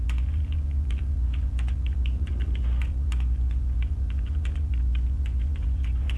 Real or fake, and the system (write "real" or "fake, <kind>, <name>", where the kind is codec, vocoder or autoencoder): fake, vocoder, Vocos